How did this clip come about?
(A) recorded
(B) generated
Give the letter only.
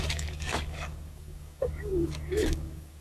B